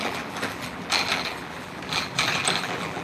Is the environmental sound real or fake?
fake